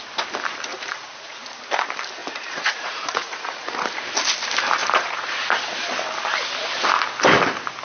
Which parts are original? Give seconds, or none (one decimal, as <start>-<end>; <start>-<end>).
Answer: 0.0-0.7; 1.6-2.2; 3.7-4.8; 5.4-7.8